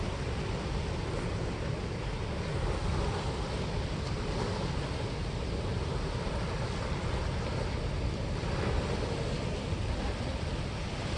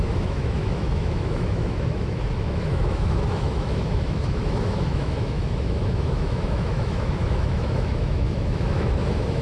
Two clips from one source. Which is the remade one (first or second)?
second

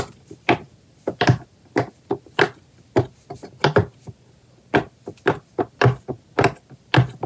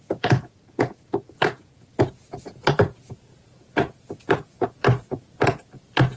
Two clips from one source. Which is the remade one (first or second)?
second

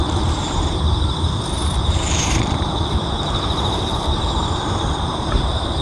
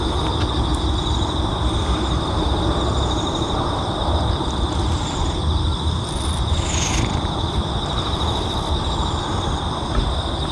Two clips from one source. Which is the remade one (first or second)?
first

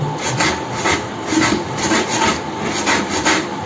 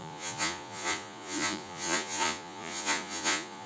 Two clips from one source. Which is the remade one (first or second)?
second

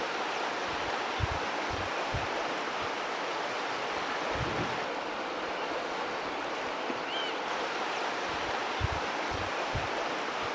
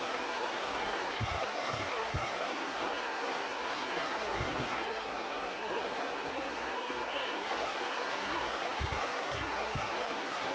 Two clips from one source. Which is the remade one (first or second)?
second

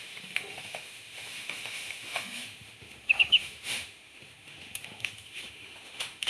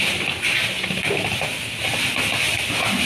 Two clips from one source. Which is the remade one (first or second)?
first